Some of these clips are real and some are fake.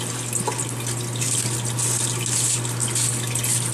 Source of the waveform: real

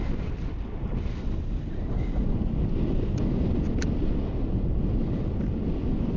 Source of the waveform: real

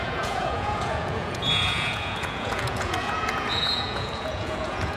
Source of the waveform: fake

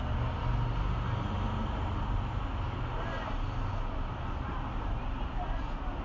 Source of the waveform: real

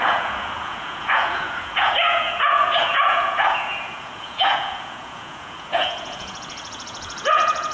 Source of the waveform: fake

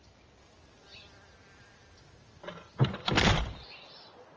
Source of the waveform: real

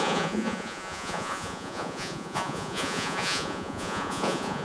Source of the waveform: fake